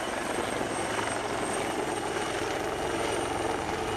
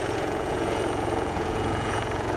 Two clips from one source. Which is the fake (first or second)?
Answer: second